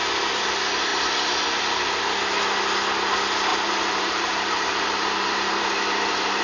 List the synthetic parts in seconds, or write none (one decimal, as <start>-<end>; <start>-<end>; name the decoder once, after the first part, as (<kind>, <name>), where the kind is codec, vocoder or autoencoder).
3.5-6.4 (vocoder, BigVGAN v2)